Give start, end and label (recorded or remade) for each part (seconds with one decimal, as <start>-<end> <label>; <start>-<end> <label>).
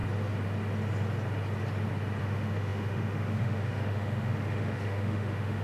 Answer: 0.0-2.2 recorded; 2.2-5.6 remade